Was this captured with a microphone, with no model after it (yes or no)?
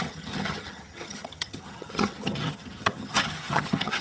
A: no